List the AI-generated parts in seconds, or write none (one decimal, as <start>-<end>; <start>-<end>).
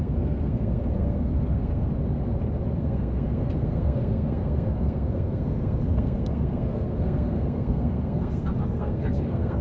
0.0-1.9; 2.8-9.6